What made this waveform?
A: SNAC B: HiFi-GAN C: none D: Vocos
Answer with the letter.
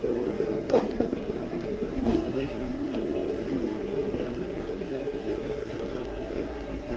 A